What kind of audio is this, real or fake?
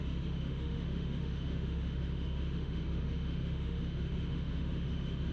fake